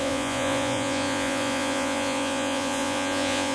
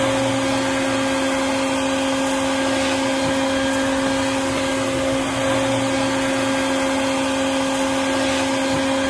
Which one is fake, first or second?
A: first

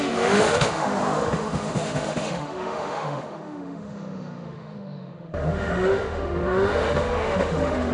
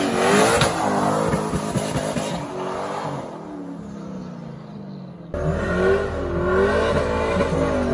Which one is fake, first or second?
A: first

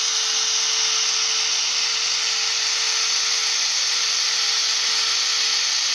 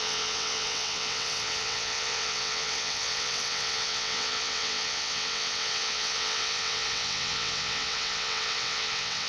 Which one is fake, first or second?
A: second